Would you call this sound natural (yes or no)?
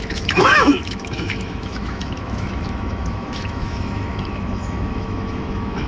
no